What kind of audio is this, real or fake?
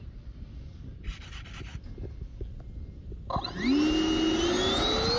real